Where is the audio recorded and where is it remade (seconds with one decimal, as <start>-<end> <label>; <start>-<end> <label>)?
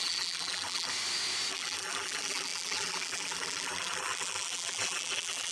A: 0.0-0.9 remade; 0.9-1.5 recorded; 1.5-5.5 remade